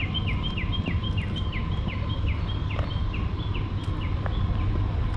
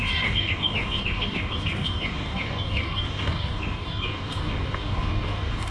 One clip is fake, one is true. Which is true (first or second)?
first